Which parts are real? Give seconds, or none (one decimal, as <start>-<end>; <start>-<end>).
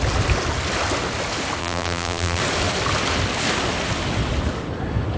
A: 0.0-1.6; 2.4-5.2